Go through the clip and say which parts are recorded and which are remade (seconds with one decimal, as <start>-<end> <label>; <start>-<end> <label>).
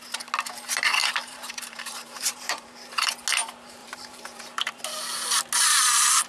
0.0-1.0 recorded; 1.0-3.1 remade; 3.1-3.8 recorded; 3.8-4.8 remade; 4.8-6.3 recorded